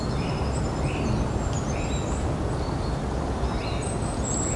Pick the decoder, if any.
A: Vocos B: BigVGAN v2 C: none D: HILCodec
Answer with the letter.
C